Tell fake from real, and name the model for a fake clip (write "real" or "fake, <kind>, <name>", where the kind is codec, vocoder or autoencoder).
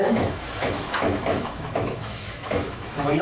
fake, autoencoder, DAC-VAE